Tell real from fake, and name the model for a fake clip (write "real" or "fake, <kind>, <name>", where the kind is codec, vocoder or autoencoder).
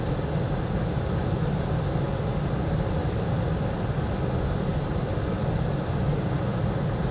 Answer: real